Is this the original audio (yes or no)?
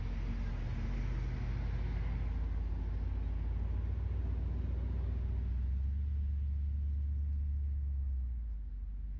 yes